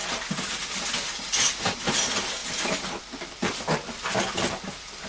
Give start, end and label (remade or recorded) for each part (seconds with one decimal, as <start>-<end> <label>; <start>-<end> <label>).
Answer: 0.0-5.1 recorded